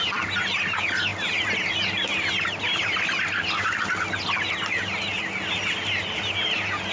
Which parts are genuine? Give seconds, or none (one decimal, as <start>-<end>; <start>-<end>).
0.0-6.9